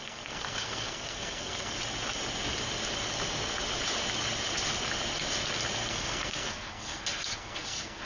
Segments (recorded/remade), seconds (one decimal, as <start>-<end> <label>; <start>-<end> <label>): 0.0-1.8 remade; 1.8-5.9 recorded; 5.9-8.1 remade